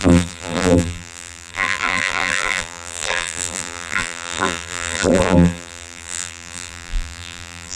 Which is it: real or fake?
fake